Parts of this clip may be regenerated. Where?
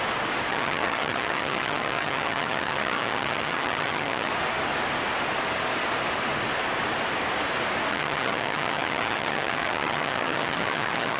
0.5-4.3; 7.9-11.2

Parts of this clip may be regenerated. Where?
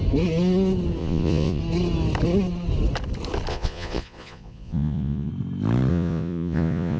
1.0-1.6; 3.5-5.3; 5.9-7.0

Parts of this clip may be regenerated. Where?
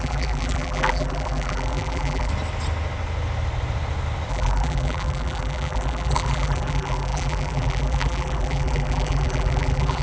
0.0-2.3; 4.3-10.0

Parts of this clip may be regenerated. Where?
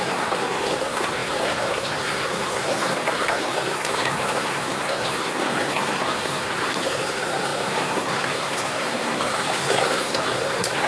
0.0-10.9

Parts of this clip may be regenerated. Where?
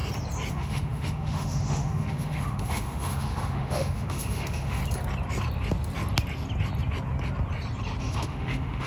0.5-4.8; 8.0-8.9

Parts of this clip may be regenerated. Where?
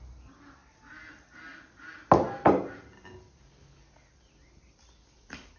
none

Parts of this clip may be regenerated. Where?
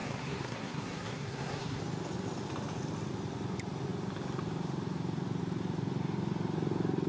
0.0-1.8